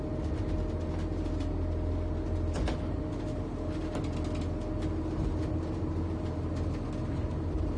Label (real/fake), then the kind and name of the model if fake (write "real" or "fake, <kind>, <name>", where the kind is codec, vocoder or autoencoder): real